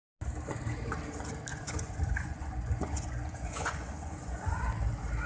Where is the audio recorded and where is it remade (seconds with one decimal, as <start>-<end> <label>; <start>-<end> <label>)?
0.0-1.5 recorded; 1.5-4.7 remade; 4.7-5.3 recorded